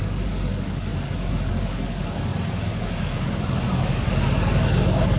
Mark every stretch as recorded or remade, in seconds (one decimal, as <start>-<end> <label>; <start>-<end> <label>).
0.0-5.2 remade